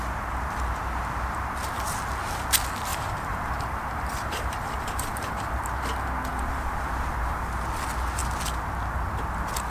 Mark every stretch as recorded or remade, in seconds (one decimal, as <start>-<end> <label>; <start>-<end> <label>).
0.0-2.9 recorded; 2.9-5.5 remade; 5.5-6.3 recorded; 6.3-7.5 remade; 7.5-9.7 recorded